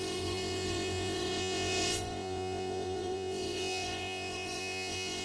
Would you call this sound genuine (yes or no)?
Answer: no